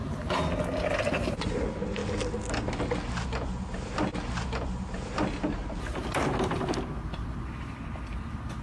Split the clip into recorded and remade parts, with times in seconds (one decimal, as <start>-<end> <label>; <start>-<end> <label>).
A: 0.0-8.6 recorded